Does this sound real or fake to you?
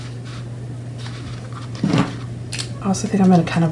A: real